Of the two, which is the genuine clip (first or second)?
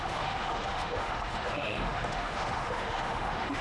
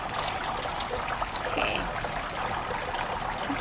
second